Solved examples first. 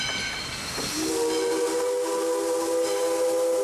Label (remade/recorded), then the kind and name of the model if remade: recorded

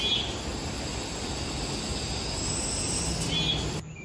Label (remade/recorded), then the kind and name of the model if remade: recorded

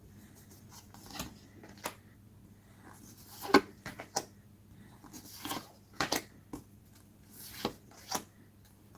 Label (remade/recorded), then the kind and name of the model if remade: recorded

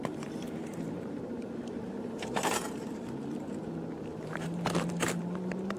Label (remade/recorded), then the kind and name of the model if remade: remade, vocoder, BigVGAN v2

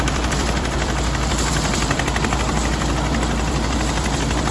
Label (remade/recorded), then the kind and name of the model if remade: remade, vocoder, BigVGAN v2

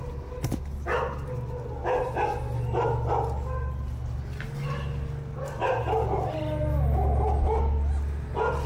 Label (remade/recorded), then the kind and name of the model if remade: recorded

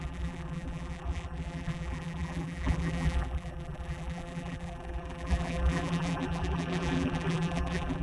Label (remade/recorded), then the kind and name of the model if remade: remade, vocoder, BigVGAN v2